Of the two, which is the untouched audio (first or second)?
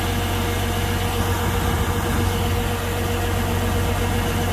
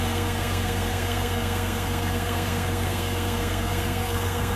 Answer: first